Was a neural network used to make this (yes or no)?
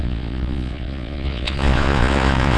yes